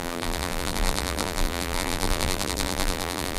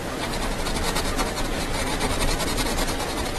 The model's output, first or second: first